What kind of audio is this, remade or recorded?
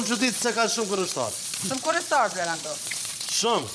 remade